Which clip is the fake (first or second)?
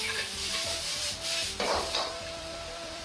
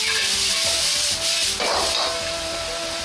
first